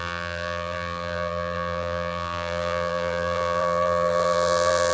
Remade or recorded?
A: remade